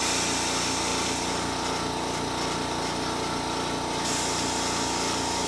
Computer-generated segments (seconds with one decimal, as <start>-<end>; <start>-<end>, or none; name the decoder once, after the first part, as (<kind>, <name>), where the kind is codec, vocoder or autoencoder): none

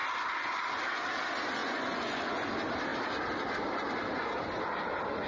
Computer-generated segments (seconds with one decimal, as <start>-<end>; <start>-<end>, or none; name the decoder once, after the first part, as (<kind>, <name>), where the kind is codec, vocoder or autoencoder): 1.6-2.5 (vocoder, Vocos)

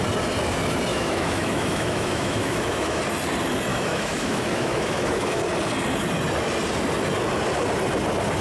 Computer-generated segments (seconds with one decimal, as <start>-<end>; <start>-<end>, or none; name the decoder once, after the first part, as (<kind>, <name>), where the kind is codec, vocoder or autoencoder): 0.9-3.0 (autoencoder, DAC-VAE); 3.7-5.4